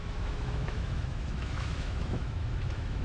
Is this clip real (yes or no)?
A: no